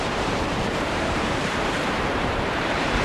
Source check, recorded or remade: remade